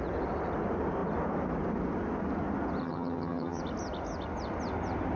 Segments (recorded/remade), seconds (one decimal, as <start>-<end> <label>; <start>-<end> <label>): 0.0-2.8 recorded; 2.8-3.6 remade; 3.6-5.2 recorded

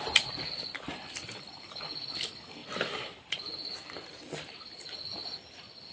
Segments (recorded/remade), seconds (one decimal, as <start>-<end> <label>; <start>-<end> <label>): 0.0-0.7 recorded; 0.7-1.7 remade; 1.7-5.2 recorded; 5.2-5.9 remade

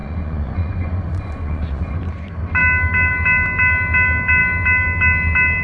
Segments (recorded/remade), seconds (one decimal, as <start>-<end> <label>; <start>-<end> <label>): 0.0-1.9 remade; 1.9-5.6 recorded

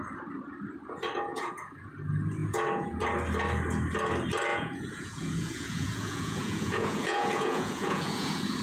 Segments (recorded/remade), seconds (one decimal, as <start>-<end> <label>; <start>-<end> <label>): 0.0-1.3 recorded; 1.3-1.9 remade; 1.9-2.4 recorded; 2.4-3.0 remade; 3.0-4.5 recorded; 4.5-8.6 remade

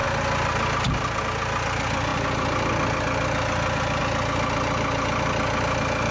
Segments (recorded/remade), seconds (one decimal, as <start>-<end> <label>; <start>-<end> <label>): 0.0-6.1 recorded